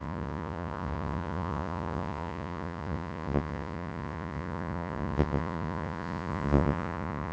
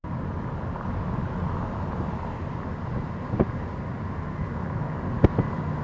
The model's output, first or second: first